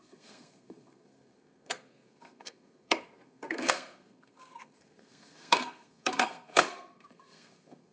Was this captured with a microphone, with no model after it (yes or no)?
no